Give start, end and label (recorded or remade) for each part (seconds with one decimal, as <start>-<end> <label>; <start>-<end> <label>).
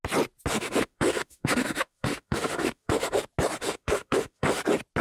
0.0-0.5 recorded; 0.5-3.2 remade; 3.2-3.6 recorded; 3.6-4.6 remade; 4.6-5.0 recorded